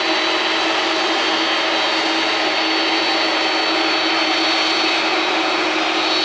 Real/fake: real